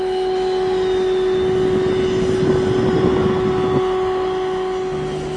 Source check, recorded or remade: recorded